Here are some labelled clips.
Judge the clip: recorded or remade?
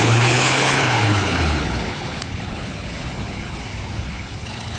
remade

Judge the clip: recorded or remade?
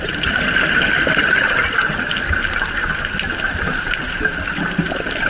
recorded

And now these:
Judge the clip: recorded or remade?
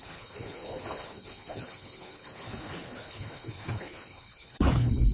remade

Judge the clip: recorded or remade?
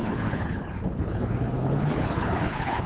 remade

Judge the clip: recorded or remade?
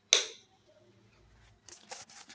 recorded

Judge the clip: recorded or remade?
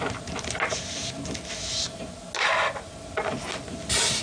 recorded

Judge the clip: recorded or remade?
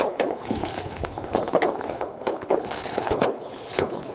remade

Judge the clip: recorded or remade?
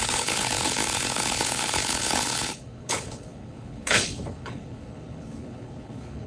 remade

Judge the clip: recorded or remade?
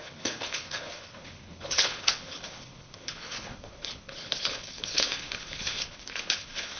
remade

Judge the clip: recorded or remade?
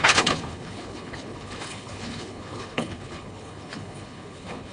remade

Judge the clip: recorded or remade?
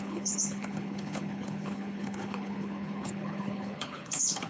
remade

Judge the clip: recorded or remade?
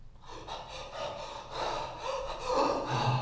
recorded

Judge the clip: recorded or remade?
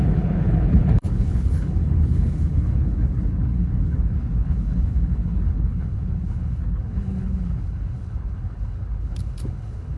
remade